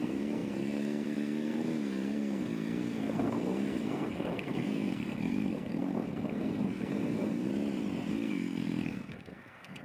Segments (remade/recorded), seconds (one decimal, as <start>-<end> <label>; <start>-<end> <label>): 0.0-7.5 remade; 7.5-8.1 recorded; 8.1-9.8 remade